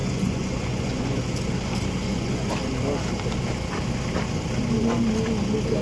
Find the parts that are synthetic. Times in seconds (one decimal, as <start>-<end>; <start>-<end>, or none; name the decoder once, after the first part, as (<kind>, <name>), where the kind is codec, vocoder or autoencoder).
0.0-1.2 (vocoder, Vocos); 2.0-2.5